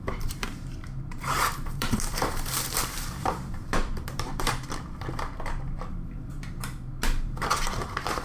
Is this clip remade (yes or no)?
yes